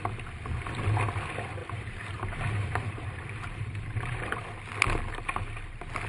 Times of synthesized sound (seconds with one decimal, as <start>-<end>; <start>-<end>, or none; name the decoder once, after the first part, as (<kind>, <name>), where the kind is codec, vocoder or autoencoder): 1.6-4.4 (vocoder, BigVGAN v2)